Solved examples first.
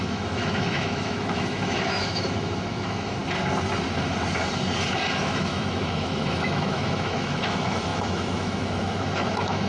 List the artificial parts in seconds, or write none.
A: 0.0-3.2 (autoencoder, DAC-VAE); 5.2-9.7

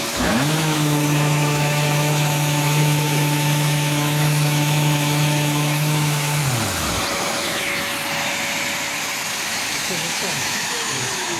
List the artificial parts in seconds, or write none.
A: 0.0-6.4 (autoencoder, DAC-VAE); 7.1-7.9; 9.7-11.4

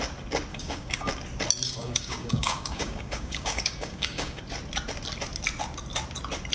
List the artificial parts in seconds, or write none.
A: 0.5-1.1 (codec, DAC); 1.8-4.4

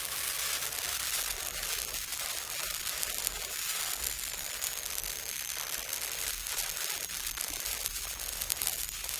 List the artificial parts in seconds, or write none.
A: none